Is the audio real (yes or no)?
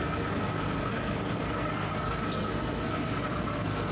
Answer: no